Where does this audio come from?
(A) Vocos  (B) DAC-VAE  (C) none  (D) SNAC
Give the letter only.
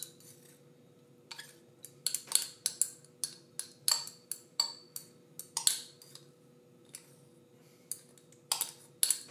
C